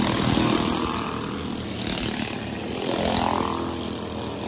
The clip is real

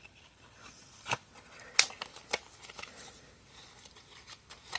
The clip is fake